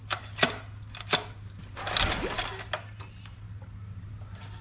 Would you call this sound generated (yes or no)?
no